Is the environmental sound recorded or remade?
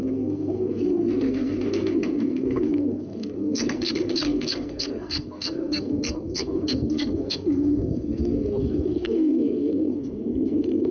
remade